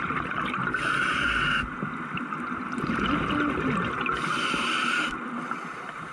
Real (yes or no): yes